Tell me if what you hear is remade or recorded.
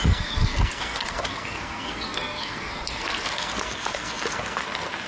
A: remade